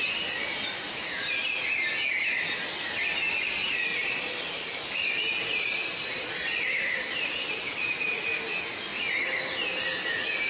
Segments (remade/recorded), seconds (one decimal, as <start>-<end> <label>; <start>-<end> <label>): 0.0-0.4 recorded; 0.4-1.1 remade; 1.1-3.9 recorded; 3.9-4.6 remade; 4.6-5.4 recorded; 5.4-9.1 remade; 9.1-10.5 recorded